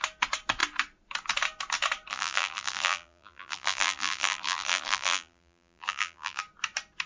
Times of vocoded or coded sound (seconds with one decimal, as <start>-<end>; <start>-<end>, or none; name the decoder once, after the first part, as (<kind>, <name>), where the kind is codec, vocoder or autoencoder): 2.1-6.4 (vocoder, BigVGAN v2)